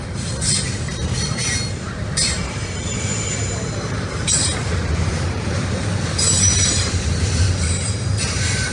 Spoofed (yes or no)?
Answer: yes